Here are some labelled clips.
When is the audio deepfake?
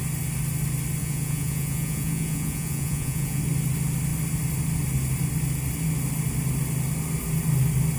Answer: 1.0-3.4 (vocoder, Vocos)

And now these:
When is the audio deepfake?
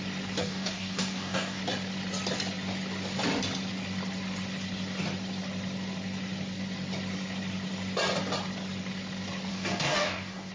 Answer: 0.4-1.6 (codec, DAC); 9.5-10.5